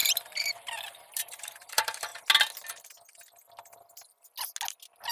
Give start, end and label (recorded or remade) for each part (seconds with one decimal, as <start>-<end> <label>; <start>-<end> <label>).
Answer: 0.0-2.1 remade; 2.1-5.1 recorded